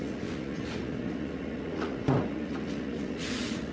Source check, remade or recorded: remade